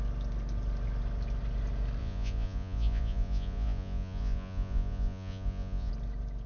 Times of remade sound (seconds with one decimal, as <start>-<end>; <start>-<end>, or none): 2.0-5.9

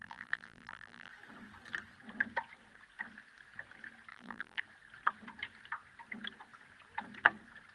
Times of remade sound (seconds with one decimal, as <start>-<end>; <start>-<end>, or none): 0.0-1.1; 4.1-4.6